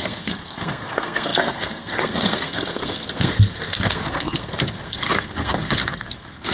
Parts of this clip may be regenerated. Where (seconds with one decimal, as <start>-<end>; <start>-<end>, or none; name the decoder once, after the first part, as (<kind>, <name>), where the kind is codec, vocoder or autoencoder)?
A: 0.0-6.5 (codec, SNAC)